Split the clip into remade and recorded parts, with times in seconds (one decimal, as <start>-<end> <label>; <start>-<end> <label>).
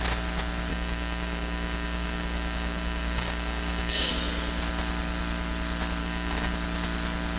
0.0-0.7 recorded; 0.7-4.1 remade; 4.1-6.0 recorded; 6.0-6.5 remade; 6.5-7.4 recorded